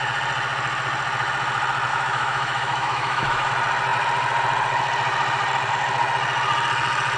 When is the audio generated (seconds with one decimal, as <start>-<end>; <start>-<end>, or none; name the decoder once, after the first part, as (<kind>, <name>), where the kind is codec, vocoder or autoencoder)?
1.9-3.5 (autoencoder, DAC-VAE)